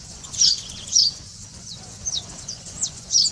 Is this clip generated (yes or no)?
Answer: yes